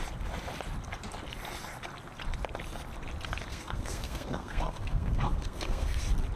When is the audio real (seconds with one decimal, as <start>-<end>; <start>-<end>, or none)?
0.0-3.5; 6.0-6.4